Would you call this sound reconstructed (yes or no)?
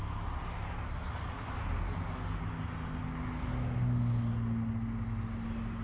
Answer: no